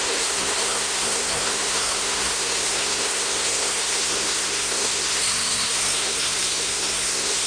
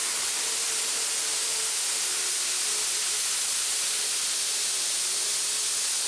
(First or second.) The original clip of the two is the second